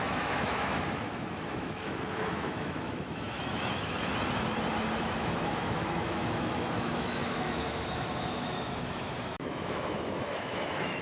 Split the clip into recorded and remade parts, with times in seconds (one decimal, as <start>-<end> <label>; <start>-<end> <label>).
0.0-4.1 remade; 4.1-5.0 recorded; 5.0-11.0 remade